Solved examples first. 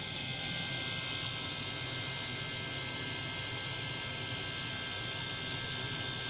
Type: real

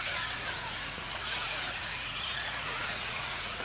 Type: fake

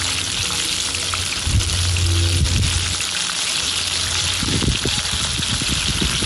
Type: real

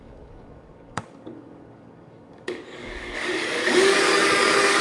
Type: fake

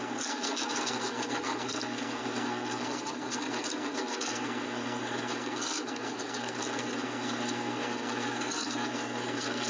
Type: fake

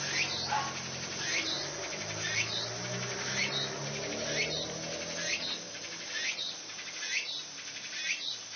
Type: real